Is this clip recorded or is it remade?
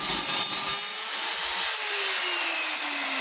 recorded